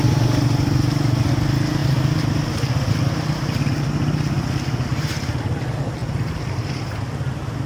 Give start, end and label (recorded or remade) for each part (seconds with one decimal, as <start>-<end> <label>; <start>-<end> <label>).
0.0-1.8 recorded; 1.8-2.9 remade; 2.9-4.9 recorded; 4.9-5.5 remade; 5.5-6.0 recorded; 6.0-7.0 remade; 7.0-7.7 recorded